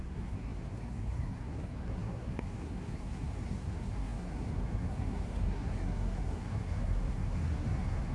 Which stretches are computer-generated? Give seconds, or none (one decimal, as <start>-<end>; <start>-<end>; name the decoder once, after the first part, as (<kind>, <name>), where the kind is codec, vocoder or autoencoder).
0.0-8.1 (codec, SNAC)